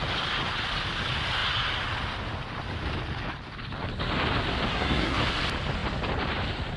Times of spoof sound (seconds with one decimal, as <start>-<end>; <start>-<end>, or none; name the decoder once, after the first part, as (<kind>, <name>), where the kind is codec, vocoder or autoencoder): 4.7-5.2 (codec, SNAC)